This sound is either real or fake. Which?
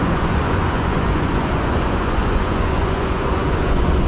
fake